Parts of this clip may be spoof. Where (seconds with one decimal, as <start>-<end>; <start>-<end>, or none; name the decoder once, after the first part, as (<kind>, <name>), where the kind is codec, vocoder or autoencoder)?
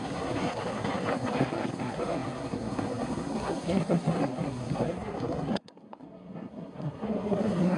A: 0.0-7.8 (codec, SNAC)